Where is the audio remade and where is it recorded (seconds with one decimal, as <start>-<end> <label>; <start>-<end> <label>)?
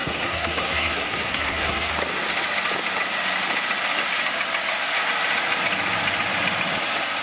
0.0-1.9 remade; 1.9-7.2 recorded